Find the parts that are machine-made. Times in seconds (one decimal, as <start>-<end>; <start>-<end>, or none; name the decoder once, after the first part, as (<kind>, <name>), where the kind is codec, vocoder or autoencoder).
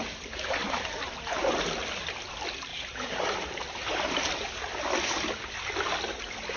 0.6-1.5 (vocoder, BigVGAN v2); 2.7-4.1